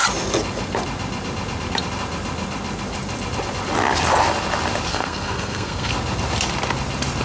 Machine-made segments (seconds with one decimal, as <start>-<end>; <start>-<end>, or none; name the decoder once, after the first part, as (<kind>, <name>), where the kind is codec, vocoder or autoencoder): 4.9-5.9 (codec, SNAC)

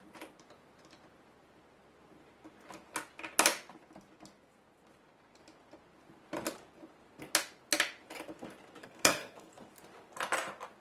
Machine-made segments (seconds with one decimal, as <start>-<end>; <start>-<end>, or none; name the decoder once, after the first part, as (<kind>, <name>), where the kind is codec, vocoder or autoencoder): 8.8-9.5 (codec, SNAC)

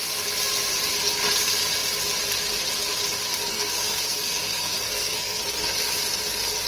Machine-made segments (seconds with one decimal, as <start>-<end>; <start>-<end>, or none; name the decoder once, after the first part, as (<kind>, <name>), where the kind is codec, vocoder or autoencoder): 3.5-5.4 (codec, SNAC)

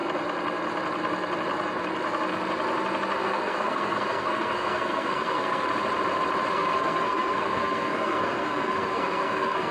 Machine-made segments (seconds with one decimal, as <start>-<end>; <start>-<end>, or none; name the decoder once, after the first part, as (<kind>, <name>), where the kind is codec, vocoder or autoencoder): 3.2-5.7 (codec, SNAC); 6.5-9.7

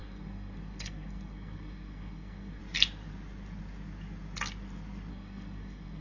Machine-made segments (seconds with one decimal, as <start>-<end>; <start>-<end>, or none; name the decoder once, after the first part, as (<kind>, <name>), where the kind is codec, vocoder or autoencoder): 0.0-2.6 (codec, SNAC); 5.1-6.0